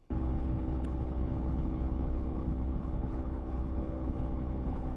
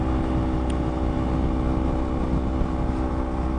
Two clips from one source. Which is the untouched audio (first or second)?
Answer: second